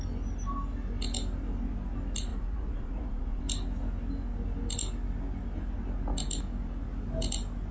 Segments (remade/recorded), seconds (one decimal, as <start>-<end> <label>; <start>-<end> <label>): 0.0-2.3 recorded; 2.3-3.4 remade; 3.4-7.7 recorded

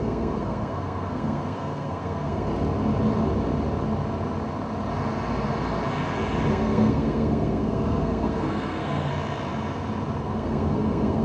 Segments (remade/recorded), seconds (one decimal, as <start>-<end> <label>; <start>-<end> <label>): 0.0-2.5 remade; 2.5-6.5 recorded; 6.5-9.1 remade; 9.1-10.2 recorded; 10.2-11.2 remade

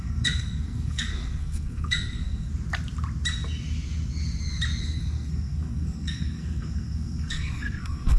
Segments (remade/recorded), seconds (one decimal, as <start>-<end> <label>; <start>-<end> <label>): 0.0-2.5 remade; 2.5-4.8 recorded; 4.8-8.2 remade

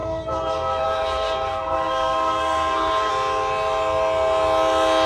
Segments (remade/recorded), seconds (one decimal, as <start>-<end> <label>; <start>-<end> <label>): 0.0-3.1 remade; 3.1-5.1 recorded

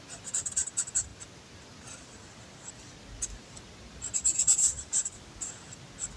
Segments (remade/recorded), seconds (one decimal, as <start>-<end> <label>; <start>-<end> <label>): 0.0-4.5 recorded; 4.5-5.2 remade; 5.2-6.2 recorded